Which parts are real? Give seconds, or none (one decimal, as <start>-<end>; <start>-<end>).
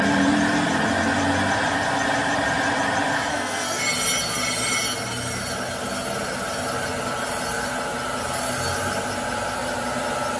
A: 0.0-3.3; 3.8-10.4